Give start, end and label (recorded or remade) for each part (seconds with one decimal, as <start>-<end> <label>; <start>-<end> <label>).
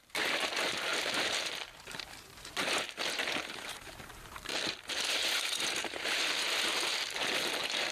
0.0-7.9 remade